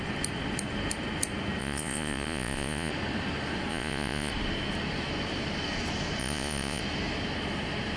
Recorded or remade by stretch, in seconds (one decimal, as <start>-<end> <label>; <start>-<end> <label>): 0.0-1.6 recorded; 1.6-2.9 remade; 2.9-3.7 recorded; 3.7-4.3 remade; 4.3-6.2 recorded; 6.2-6.8 remade; 6.8-8.0 recorded